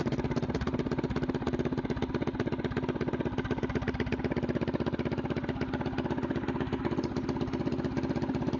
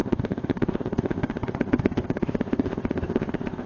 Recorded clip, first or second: first